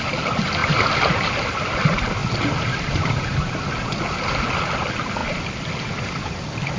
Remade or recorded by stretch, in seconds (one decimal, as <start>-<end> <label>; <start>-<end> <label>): 0.0-6.8 recorded